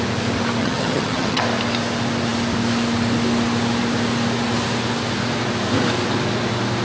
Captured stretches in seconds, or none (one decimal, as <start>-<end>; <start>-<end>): 0.0-0.6; 1.4-6.8